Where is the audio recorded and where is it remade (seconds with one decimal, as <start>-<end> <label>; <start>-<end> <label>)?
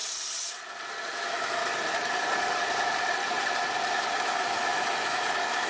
0.0-1.1 recorded; 1.1-1.6 remade; 1.6-4.2 recorded; 4.2-5.7 remade